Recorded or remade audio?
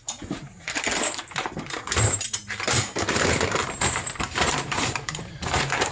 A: remade